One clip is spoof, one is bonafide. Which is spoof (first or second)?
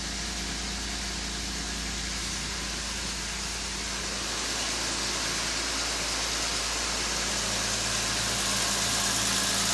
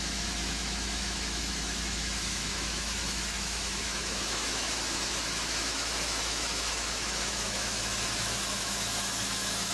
second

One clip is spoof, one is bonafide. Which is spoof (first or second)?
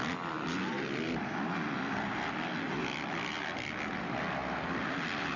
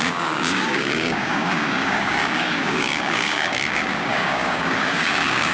second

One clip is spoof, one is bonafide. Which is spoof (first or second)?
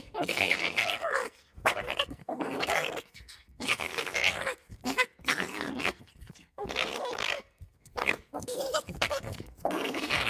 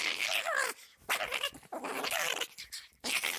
first